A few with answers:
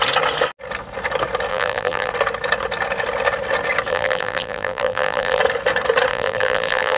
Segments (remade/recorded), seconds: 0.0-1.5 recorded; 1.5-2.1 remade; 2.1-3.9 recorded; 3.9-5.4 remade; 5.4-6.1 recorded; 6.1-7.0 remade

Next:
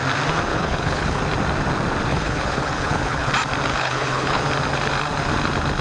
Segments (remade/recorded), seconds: 0.0-0.5 recorded; 0.5-1.2 remade; 1.2-2.1 recorded; 2.1-3.3 remade; 3.3-3.7 recorded; 3.7-4.4 remade; 4.4-5.8 recorded

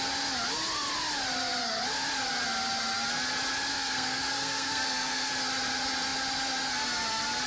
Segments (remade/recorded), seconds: 0.0-3.7 recorded; 3.7-5.3 remade; 5.3-7.5 recorded